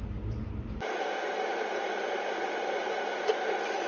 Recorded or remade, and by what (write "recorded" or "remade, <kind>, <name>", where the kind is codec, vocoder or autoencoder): recorded